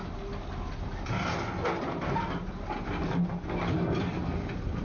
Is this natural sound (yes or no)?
yes